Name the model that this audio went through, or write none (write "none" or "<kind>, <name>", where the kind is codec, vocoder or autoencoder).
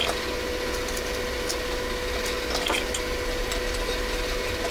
none